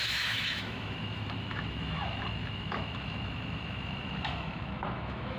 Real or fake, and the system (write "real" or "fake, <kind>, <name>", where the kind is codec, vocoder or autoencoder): fake, autoencoder, DAC-VAE